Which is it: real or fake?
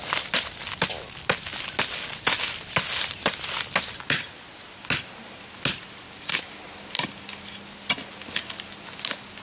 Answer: real